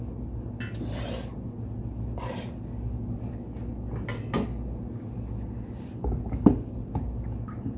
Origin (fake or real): real